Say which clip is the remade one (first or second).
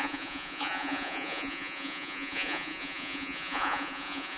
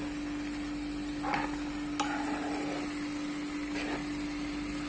first